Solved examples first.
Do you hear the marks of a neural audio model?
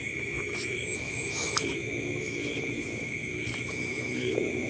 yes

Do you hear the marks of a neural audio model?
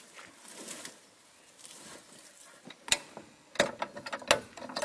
no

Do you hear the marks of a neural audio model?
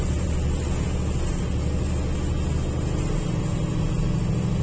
no